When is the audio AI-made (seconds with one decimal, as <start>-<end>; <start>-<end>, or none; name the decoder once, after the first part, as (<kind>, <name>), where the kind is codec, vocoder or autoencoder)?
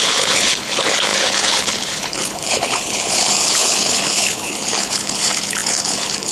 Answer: 0.0-6.3 (codec, HILCodec)